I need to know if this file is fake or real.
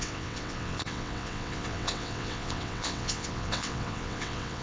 fake